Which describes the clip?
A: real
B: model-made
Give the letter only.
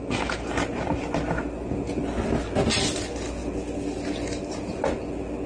A